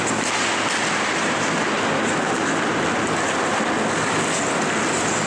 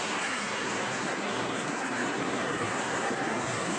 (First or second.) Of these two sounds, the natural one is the first